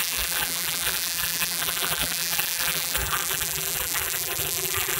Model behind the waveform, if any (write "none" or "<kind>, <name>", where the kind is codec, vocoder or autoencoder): vocoder, BigVGAN v2